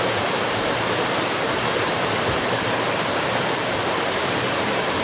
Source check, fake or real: fake